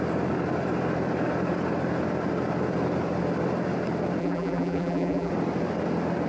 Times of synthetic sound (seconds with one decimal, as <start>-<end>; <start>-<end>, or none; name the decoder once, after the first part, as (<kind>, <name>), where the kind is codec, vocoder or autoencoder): 4.2-5.3 (vocoder, BigVGAN v2)